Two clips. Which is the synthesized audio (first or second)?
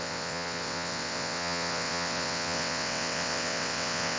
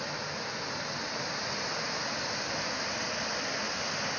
first